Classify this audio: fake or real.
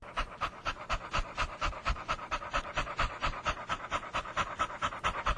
real